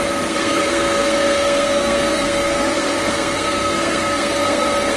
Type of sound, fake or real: fake